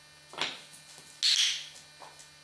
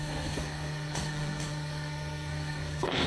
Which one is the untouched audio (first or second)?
first